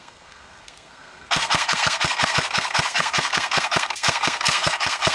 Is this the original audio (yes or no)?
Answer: no